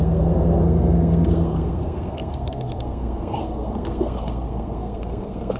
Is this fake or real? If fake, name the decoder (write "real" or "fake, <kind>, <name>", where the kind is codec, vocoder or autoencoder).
fake, codec, SNAC